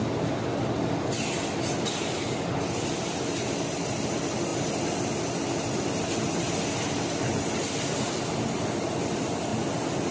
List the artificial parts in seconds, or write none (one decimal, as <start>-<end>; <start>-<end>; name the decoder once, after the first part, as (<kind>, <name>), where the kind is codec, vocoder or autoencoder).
none